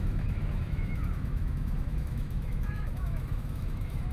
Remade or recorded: remade